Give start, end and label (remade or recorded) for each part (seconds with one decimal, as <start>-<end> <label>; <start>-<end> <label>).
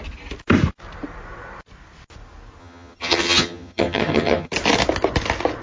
0.0-2.6 recorded; 2.6-4.5 remade; 4.5-5.6 recorded